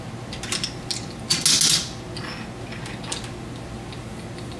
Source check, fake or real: real